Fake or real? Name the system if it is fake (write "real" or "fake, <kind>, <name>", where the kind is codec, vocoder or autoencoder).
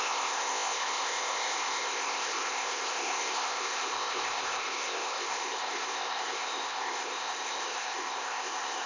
fake, codec, ZipCodec